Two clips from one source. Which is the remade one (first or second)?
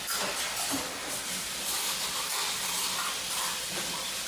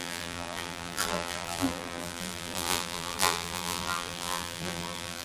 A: second